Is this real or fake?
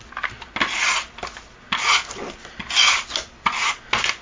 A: real